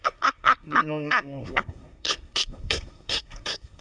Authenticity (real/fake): fake